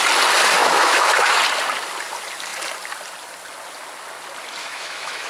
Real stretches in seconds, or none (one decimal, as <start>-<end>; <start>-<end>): 0.0-0.6; 1.4-4.6